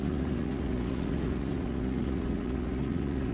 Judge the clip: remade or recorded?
remade